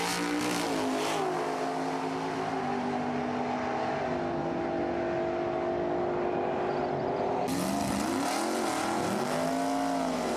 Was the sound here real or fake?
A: real